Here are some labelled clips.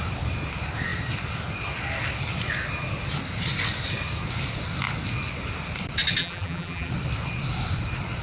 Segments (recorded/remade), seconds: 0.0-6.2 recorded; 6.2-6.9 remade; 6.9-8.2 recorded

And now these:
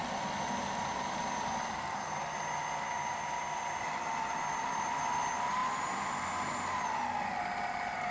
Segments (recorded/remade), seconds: 0.0-8.1 recorded